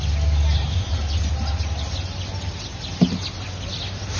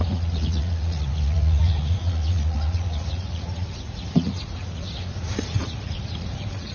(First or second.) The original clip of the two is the first